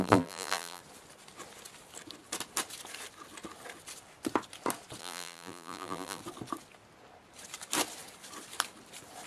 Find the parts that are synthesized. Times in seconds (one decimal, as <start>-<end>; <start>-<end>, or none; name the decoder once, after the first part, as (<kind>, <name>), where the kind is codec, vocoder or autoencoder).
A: 0.0-0.8 (vocoder, BigVGAN v2); 5.0-6.2